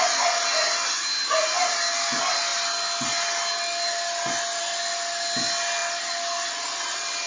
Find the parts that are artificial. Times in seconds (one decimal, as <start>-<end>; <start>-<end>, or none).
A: none